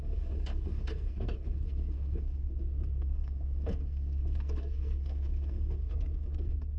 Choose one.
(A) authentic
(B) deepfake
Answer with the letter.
B